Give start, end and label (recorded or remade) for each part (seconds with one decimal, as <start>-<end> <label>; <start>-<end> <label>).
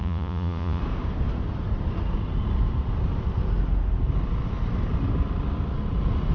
0.0-0.8 remade; 0.8-6.3 recorded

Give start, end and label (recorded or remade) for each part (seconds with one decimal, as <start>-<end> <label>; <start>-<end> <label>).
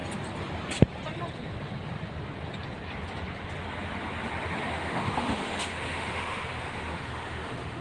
0.0-4.7 recorded; 4.7-7.8 remade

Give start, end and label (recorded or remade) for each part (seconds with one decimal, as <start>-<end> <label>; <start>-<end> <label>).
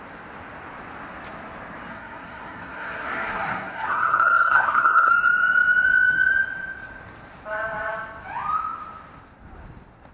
0.0-1.9 recorded; 1.9-5.1 remade; 5.1-10.1 recorded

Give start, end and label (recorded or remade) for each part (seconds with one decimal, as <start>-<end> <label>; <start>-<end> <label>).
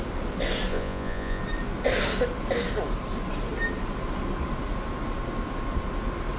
0.0-0.7 recorded; 0.7-1.4 remade; 1.4-6.4 recorded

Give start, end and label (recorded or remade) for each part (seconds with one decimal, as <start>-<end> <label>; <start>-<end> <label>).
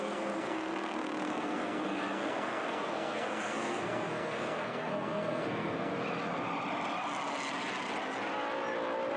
0.0-5.9 remade; 5.9-9.2 recorded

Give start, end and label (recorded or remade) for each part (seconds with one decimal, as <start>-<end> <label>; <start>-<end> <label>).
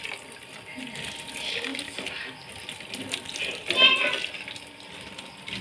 0.0-5.6 recorded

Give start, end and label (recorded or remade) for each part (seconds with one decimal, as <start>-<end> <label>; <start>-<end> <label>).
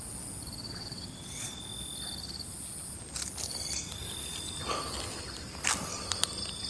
0.0-0.6 recorded; 0.6-1.5 remade; 1.5-6.7 recorded